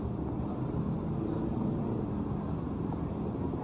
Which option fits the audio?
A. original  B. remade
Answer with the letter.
A